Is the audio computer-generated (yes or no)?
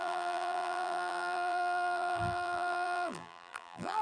yes